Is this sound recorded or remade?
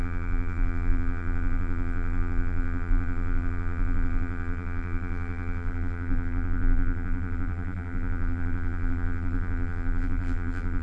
remade